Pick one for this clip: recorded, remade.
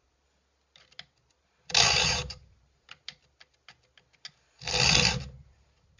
recorded